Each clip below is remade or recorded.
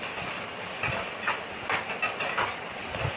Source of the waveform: recorded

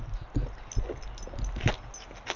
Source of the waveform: recorded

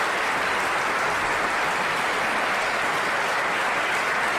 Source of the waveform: recorded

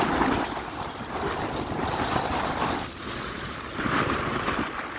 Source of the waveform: recorded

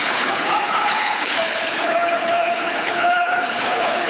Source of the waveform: remade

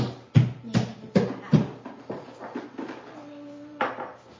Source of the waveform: recorded